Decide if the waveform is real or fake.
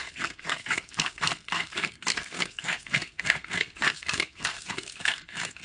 fake